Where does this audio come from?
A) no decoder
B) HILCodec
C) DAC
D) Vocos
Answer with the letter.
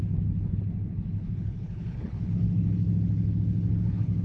B